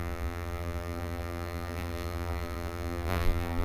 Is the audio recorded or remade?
remade